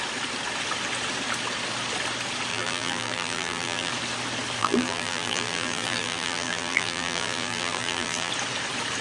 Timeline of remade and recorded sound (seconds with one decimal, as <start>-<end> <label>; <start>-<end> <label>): 0.0-2.5 recorded; 2.5-3.9 remade; 3.9-4.6 recorded; 4.6-8.3 remade; 8.3-9.0 recorded